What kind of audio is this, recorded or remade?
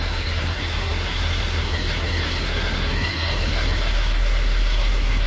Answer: remade